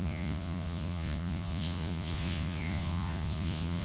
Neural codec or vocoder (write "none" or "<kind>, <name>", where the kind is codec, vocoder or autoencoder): vocoder, Vocos